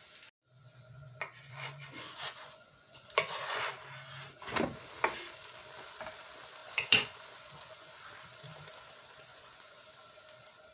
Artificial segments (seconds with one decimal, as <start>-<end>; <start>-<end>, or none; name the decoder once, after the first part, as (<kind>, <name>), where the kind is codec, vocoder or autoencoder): 0.6-3.7 (vocoder, Vocos); 6.6-7.9; 9.3-9.8